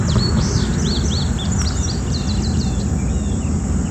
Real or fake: real